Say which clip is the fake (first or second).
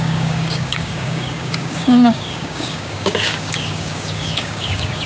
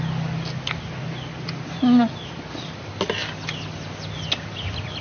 first